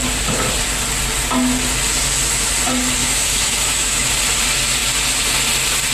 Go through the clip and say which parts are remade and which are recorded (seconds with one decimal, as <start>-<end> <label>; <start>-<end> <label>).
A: 0.0-3.0 recorded; 3.0-4.1 remade; 4.1-5.9 recorded

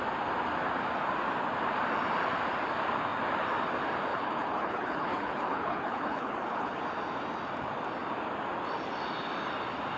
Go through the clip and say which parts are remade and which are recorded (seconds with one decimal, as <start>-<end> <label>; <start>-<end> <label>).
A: 0.0-4.1 recorded; 4.1-6.8 remade; 6.8-10.0 recorded

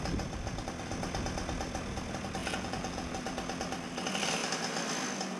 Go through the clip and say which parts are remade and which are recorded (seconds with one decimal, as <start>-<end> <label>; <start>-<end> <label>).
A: 0.0-2.4 recorded; 2.4-3.1 remade; 3.1-5.4 recorded

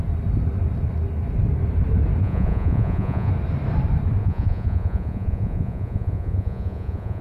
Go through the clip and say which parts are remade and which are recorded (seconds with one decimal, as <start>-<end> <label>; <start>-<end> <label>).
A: 0.0-2.2 recorded; 2.2-3.3 remade; 3.3-4.2 recorded; 4.2-7.2 remade

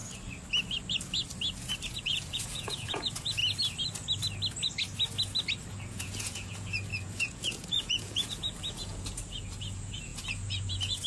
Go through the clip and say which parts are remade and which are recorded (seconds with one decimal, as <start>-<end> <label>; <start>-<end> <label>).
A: 0.0-1.9 recorded; 1.9-3.4 remade; 3.4-5.7 recorded; 5.7-11.1 remade

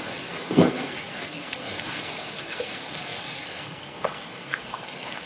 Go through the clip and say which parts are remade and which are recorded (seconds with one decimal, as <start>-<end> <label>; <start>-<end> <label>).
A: 0.0-5.3 remade